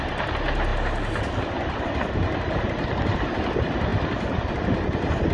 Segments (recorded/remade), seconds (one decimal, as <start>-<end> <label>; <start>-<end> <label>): 0.0-5.3 recorded